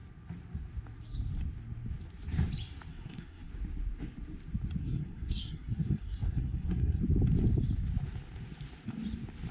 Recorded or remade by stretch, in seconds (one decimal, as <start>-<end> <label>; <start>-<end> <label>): 0.0-2.9 recorded; 2.9-3.5 remade; 3.5-4.8 recorded; 4.8-7.0 remade; 7.0-9.5 recorded

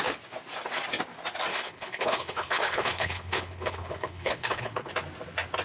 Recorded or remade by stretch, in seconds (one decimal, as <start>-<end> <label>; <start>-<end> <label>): 0.0-1.5 recorded; 1.5-4.9 remade; 4.9-5.6 recorded

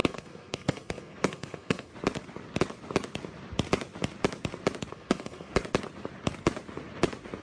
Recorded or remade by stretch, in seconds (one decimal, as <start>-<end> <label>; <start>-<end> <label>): 0.0-1.9 remade; 1.9-4.9 recorded; 4.9-5.5 remade; 5.5-7.4 recorded

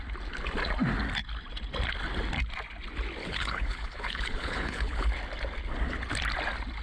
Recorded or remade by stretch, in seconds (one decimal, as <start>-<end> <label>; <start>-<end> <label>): 0.0-3.2 recorded; 3.2-5.1 remade; 5.1-6.8 recorded